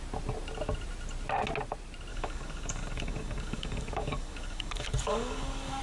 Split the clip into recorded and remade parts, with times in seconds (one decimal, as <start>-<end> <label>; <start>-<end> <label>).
0.0-2.1 recorded; 2.1-5.8 remade